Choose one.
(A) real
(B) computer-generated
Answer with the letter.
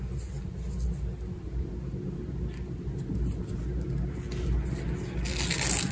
A